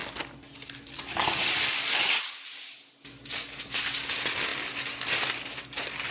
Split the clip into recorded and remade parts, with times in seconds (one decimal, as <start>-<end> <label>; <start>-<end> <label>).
0.0-6.1 recorded